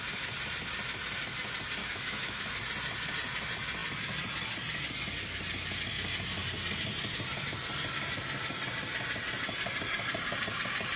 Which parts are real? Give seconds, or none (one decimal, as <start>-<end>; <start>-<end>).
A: 0.0-1.8; 2.6-11.0